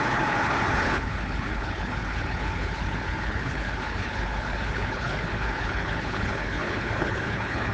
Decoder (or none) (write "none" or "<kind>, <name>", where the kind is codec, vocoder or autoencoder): codec, HILCodec